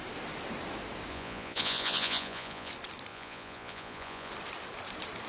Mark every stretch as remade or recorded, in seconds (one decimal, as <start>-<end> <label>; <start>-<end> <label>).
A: 0.0-1.1 recorded; 1.1-2.7 remade; 2.7-3.1 recorded; 3.1-4.3 remade; 4.3-5.3 recorded